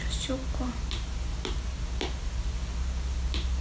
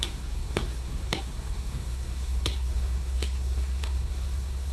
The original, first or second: first